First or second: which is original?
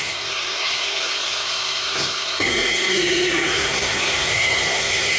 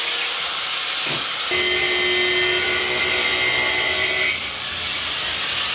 second